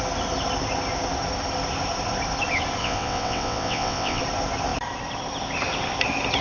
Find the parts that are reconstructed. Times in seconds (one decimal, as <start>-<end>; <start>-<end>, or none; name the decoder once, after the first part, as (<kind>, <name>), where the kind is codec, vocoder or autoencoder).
2.8-4.2 (vocoder, WaveNeXt)